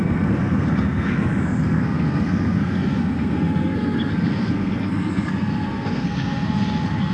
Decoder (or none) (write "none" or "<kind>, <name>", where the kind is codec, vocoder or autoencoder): codec, SNAC